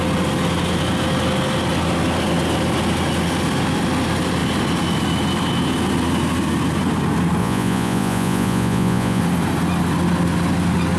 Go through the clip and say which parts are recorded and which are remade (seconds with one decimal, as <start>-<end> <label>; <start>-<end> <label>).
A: 0.0-7.4 recorded; 7.4-9.2 remade; 9.2-11.0 recorded